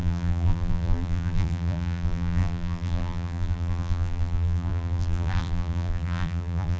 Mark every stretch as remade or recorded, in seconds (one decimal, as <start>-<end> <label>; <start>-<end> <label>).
0.0-6.8 remade